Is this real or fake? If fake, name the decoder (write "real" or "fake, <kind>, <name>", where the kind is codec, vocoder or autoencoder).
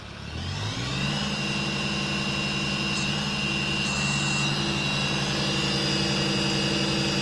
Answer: real